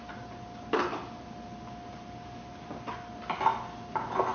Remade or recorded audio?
recorded